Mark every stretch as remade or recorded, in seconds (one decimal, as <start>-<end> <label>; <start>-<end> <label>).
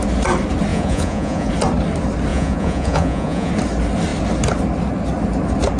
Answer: 0.0-0.7 recorded; 0.7-1.5 remade; 1.5-2.3 recorded; 2.3-3.5 remade; 3.5-5.8 recorded